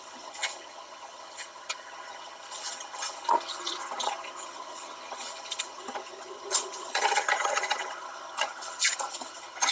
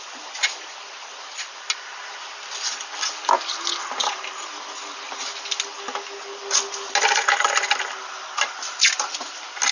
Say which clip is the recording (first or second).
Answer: second